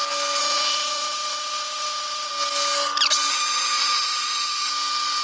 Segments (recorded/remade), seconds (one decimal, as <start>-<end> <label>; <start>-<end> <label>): 0.0-0.4 recorded; 0.4-2.3 remade; 2.3-3.3 recorded; 3.3-4.7 remade; 4.7-5.2 recorded